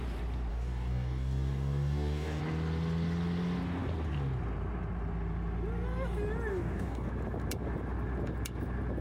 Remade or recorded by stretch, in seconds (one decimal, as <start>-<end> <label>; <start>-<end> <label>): 0.0-0.5 recorded; 0.5-2.4 remade; 2.4-6.5 recorded; 6.5-7.1 remade; 7.1-9.0 recorded